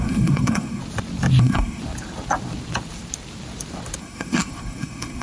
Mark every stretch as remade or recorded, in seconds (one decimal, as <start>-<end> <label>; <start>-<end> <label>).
0.0-0.8 remade; 0.8-1.4 recorded; 1.4-1.8 remade; 1.8-4.0 recorded; 4.0-5.2 remade